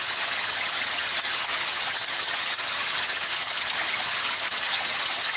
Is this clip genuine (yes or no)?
no